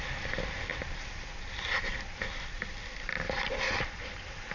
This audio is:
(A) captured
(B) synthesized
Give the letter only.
A